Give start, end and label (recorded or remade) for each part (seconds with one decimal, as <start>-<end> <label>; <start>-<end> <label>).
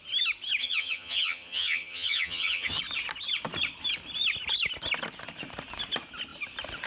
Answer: 0.0-0.6 recorded; 0.6-2.8 remade; 2.8-6.9 recorded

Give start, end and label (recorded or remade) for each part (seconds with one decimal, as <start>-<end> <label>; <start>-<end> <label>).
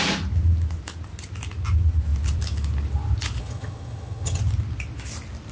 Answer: 0.0-3.4 recorded; 3.4-4.4 remade; 4.4-5.5 recorded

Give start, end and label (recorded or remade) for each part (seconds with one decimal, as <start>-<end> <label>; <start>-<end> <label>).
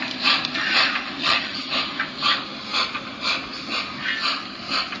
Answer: 0.0-1.2 recorded; 1.2-1.7 remade; 1.7-5.0 recorded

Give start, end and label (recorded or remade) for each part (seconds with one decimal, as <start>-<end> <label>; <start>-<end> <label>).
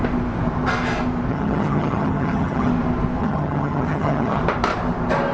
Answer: 0.0-1.3 recorded; 1.3-2.7 remade; 2.7-3.2 recorded; 3.2-4.4 remade; 4.4-5.3 recorded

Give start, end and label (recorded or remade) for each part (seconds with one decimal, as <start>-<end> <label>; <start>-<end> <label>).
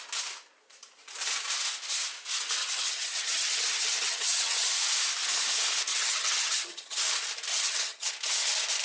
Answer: 0.0-2.6 recorded; 2.6-4.7 remade; 4.7-5.9 recorded; 5.9-7.0 remade; 7.0-7.5 recorded; 7.5-8.1 remade; 8.1-8.8 recorded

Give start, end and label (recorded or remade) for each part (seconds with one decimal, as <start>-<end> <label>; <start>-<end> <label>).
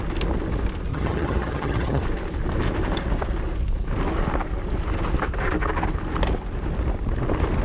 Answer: 0.0-0.9 recorded; 0.9-2.0 remade; 2.0-7.6 recorded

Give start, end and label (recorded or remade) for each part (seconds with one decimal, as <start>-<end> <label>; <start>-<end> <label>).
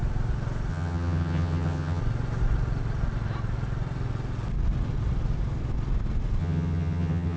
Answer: 0.0-0.7 recorded; 0.7-2.0 remade; 2.0-6.4 recorded; 6.4-7.4 remade